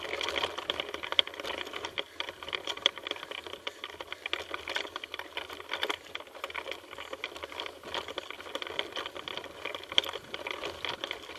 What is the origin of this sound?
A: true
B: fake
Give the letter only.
A